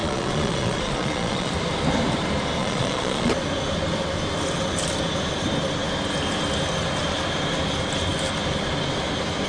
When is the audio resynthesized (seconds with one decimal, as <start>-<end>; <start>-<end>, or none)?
0.0-1.5; 2.6-3.3